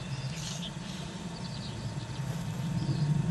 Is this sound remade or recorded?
remade